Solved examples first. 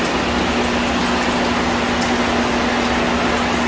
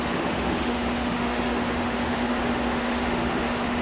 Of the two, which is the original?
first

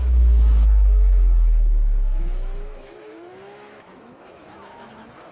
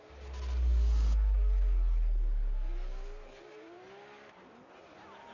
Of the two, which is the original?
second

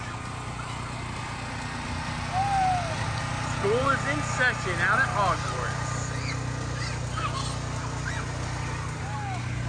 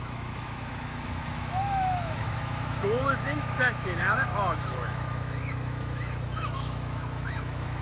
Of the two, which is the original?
first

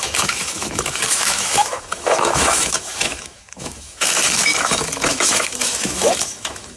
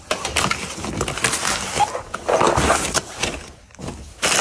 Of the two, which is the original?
second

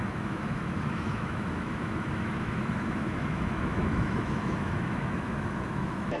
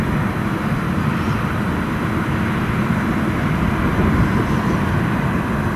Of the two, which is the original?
second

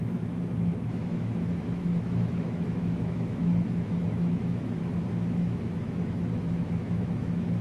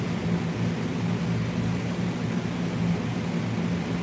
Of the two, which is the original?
second